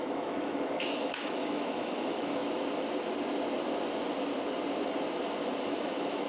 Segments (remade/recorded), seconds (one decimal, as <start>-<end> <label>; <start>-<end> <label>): 0.0-2.4 remade; 2.4-5.6 recorded; 5.6-6.3 remade